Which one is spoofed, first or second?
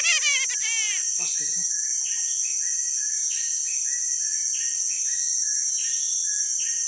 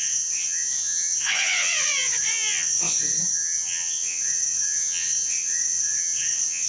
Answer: second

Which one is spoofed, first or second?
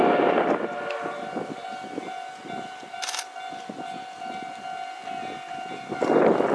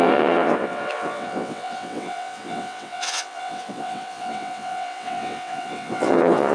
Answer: second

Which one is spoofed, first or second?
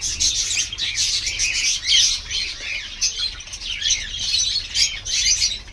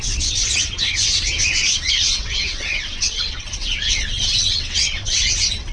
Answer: second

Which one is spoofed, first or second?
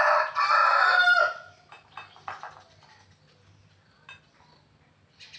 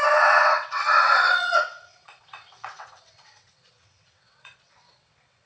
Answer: second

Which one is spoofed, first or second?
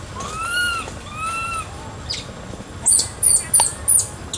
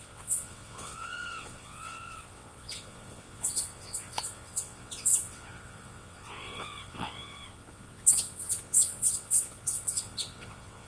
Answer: second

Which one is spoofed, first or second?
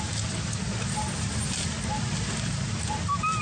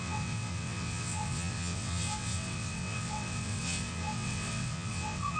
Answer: second